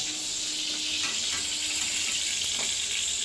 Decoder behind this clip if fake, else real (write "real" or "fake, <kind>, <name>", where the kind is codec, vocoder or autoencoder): real